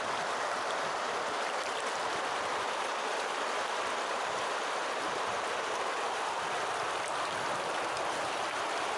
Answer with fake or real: real